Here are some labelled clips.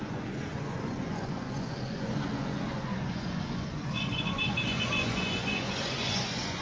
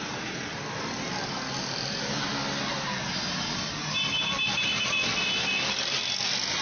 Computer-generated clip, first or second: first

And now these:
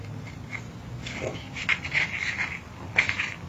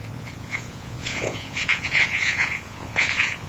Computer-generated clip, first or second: second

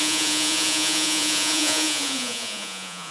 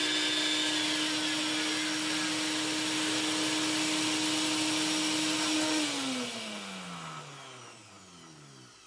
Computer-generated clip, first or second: first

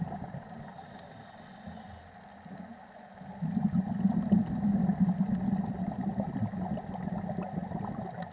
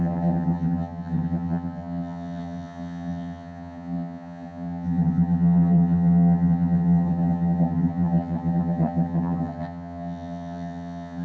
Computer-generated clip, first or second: second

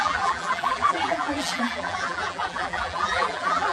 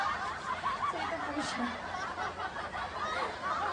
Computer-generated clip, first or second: first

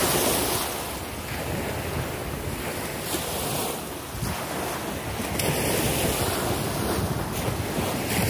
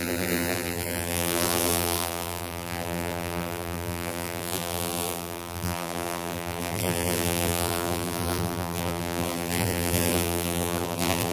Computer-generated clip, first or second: second